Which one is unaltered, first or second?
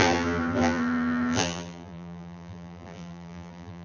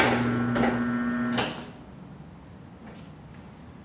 second